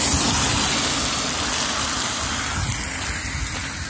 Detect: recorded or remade recorded